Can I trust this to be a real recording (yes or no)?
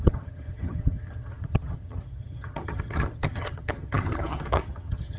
no